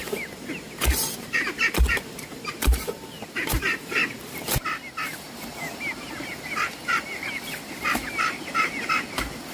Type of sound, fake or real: real